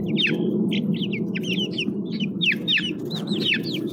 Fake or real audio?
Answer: real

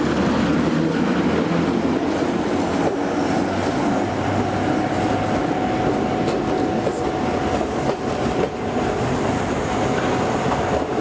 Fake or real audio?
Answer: real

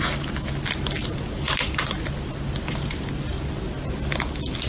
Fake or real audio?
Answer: real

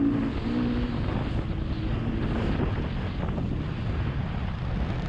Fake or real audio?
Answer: real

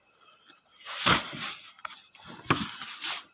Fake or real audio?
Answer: real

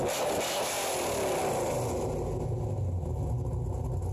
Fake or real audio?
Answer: real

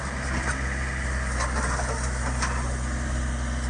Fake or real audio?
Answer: real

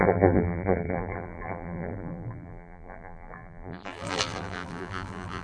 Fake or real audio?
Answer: fake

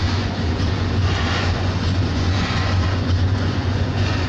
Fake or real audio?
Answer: fake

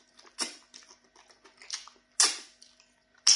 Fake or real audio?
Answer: real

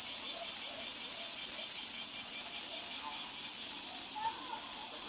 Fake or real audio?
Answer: real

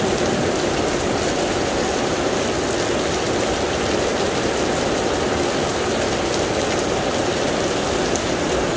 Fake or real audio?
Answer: real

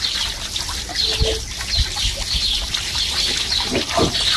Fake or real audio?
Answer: real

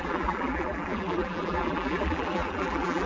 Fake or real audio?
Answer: fake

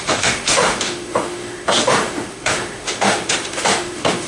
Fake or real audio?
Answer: fake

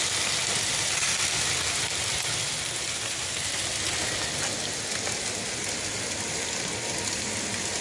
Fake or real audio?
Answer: real